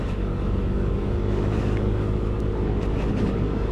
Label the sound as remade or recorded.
remade